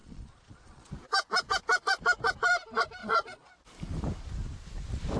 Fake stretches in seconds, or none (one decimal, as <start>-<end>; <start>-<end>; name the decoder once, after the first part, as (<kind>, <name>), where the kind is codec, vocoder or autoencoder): 0.0-0.9 (vocoder, Vocos); 3.0-3.5